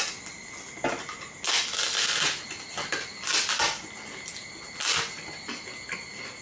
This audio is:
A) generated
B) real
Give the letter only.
B